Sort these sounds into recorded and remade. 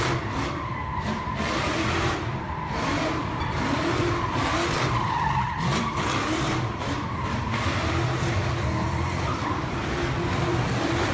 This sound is remade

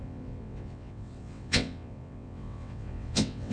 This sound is remade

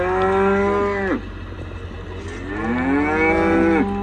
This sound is recorded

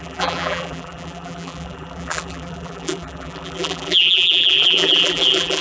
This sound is remade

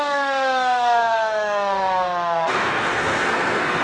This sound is remade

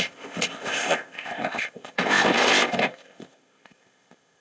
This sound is remade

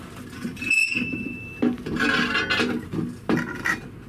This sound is recorded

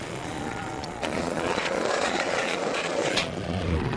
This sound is remade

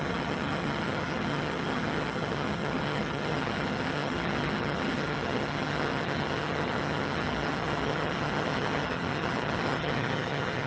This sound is remade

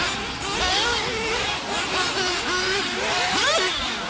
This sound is recorded